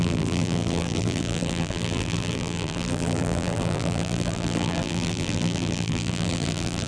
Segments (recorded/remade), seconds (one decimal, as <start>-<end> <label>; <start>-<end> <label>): 0.0-6.9 remade